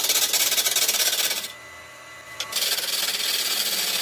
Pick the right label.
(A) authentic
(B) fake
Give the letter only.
A